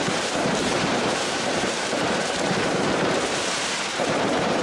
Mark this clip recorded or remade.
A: remade